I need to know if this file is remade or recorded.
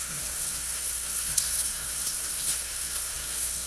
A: remade